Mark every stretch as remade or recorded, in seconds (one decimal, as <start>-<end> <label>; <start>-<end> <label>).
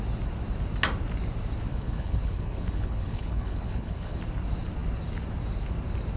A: 0.0-1.7 recorded; 1.7-4.2 remade; 4.2-6.2 recorded